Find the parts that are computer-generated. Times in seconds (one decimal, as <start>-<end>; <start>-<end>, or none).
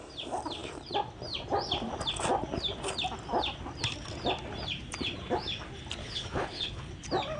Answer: 6.0-6.9